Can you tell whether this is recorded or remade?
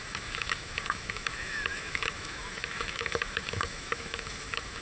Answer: remade